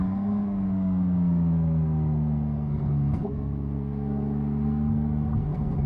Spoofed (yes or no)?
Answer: yes